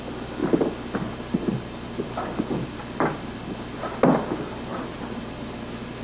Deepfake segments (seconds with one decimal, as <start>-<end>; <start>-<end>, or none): 4.7-5.2